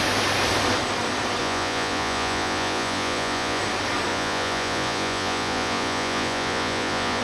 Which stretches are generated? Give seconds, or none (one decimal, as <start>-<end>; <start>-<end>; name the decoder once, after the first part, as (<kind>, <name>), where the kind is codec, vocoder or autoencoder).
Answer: 1.4-3.6 (vocoder, Vocos); 4.1-7.2